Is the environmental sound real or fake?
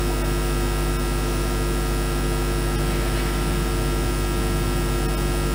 real